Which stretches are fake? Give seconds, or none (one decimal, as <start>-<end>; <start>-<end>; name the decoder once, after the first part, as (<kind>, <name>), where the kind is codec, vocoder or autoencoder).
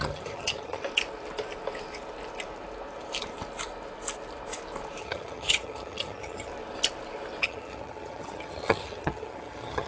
0.0-0.8 (vocoder, HiFi-GAN); 5.0-6.5; 7.4-9.9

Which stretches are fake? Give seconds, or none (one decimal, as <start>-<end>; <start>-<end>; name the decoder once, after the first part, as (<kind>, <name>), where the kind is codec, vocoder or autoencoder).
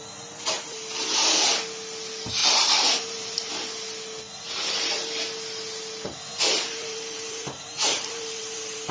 2.4-3.5 (vocoder, BigVGAN v2); 6.3-8.9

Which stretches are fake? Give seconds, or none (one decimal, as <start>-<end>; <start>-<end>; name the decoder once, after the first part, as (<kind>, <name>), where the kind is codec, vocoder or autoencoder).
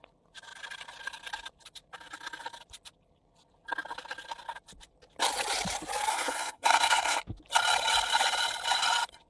6.1-7.2 (codec, SNAC)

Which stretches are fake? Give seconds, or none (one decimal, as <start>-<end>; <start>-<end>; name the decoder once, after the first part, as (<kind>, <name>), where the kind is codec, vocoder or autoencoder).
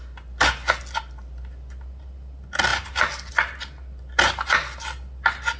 none